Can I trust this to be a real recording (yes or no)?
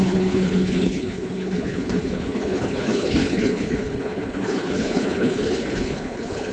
no